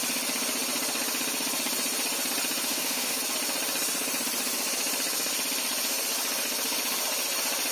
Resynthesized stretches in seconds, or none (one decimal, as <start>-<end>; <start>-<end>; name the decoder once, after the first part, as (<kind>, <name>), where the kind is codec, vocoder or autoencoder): 2.7-3.2 (autoencoder, DAC-VAE)